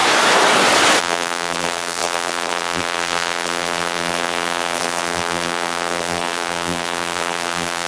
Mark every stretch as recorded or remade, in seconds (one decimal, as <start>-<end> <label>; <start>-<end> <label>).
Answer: 0.0-1.0 recorded; 1.0-7.9 remade